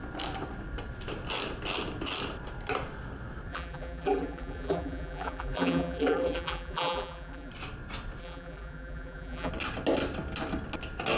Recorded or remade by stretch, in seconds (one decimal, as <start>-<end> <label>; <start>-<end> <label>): 0.0-3.5 recorded; 3.5-7.5 remade; 7.5-8.2 recorded; 8.2-9.5 remade; 9.5-11.2 recorded